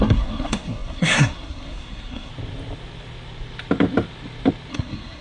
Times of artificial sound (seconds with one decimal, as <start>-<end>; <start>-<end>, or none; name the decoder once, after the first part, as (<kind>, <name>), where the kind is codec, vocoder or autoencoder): 0.0-2.3 (codec, SNAC); 4.7-5.2